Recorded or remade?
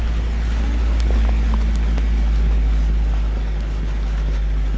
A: recorded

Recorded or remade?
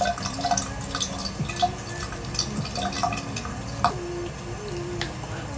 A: recorded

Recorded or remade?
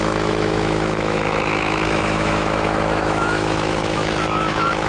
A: remade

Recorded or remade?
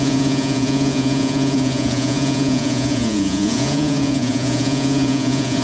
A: remade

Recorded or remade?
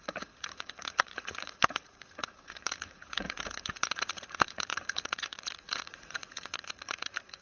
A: remade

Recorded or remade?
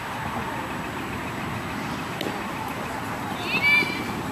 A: recorded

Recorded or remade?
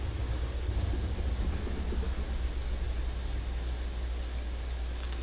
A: recorded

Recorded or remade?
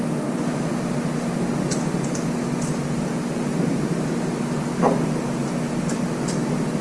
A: recorded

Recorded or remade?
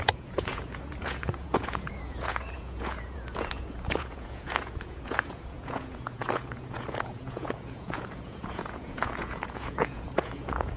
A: remade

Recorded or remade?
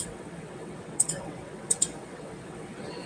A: remade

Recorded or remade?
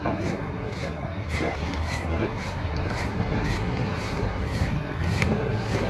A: remade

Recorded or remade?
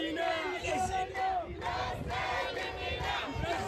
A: recorded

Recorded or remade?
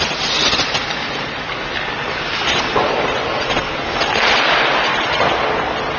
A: recorded